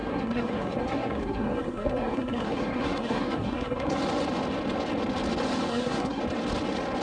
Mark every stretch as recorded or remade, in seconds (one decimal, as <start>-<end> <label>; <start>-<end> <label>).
0.0-4.0 remade; 4.0-5.7 recorded; 5.7-6.2 remade; 6.2-7.0 recorded